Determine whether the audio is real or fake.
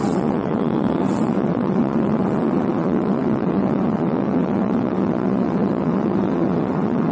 fake